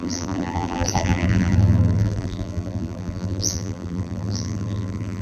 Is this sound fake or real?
fake